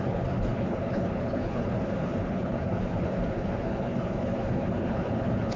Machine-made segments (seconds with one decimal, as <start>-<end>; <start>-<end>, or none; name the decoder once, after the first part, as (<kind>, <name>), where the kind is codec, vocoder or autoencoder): 0.0-5.6 (codec, HILCodec)